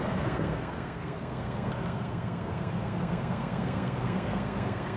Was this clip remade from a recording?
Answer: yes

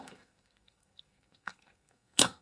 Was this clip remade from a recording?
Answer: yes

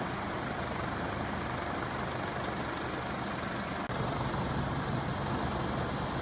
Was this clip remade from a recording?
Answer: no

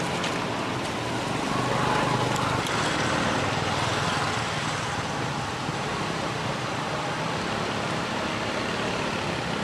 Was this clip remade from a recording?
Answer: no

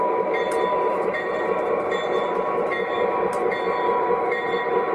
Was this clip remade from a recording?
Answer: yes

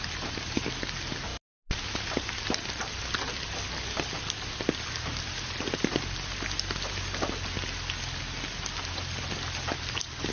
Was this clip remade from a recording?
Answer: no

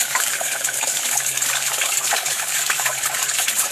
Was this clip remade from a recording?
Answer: yes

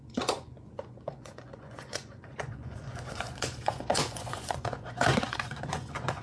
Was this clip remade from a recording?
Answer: yes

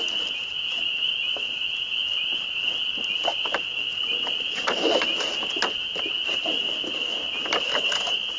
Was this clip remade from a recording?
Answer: no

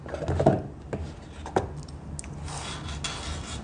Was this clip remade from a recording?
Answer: no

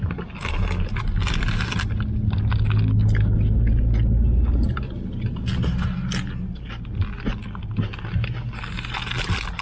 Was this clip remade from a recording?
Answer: no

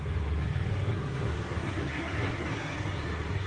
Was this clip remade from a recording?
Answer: yes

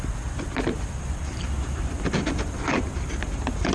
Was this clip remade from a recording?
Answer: no